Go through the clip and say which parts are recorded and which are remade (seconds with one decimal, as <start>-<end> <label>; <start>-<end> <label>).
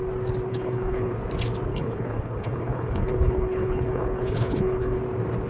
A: 0.0-0.5 recorded; 0.5-1.1 remade; 1.1-1.7 recorded; 1.7-5.0 remade; 5.0-5.5 recorded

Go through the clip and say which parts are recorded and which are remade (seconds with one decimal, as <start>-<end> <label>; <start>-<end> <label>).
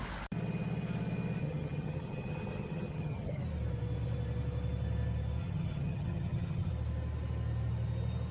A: 0.0-1.4 recorded; 1.4-3.4 remade; 3.4-5.4 recorded; 5.4-6.7 remade; 6.7-8.3 recorded